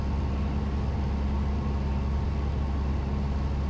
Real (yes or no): yes